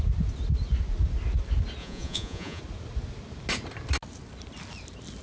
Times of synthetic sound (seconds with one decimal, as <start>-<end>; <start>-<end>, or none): 1.8-2.6